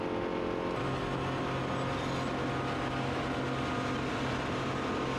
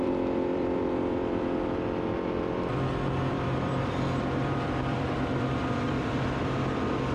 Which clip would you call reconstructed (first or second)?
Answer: second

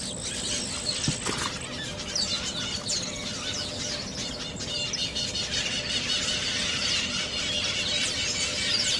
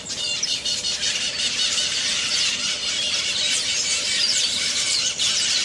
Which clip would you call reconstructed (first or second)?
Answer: second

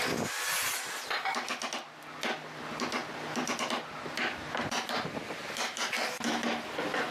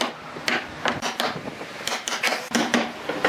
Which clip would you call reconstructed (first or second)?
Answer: second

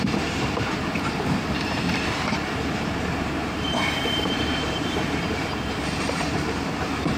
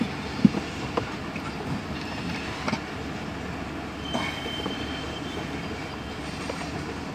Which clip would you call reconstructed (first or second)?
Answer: first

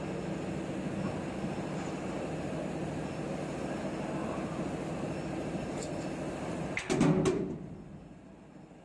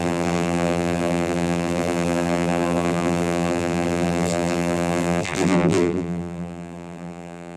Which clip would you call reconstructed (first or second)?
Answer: second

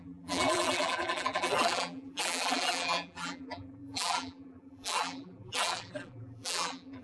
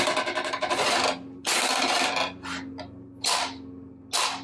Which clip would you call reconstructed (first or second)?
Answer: first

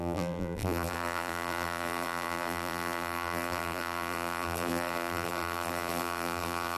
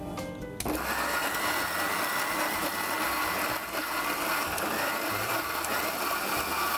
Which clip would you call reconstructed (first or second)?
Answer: first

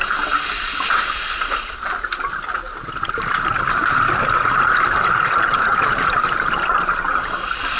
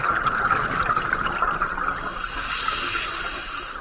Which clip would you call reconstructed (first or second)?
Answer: first